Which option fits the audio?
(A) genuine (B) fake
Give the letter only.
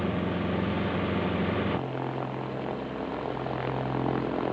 A